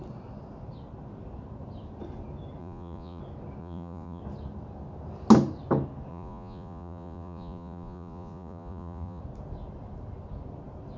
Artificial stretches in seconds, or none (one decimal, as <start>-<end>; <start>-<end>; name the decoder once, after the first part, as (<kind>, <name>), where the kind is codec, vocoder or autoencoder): 2.6-3.2 (vocoder, Vocos); 3.6-4.2; 6.1-9.2

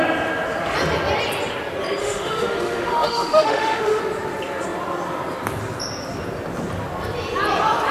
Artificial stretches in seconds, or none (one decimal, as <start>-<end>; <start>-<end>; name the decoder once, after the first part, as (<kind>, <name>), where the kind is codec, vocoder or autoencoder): 2.0-4.0 (autoencoder, DAC-VAE)